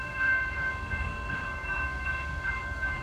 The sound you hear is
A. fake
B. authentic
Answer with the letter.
A